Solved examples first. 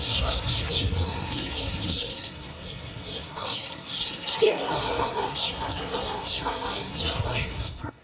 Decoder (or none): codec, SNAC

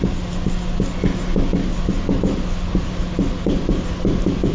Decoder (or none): none